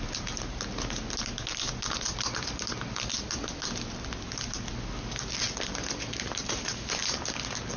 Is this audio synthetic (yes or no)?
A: no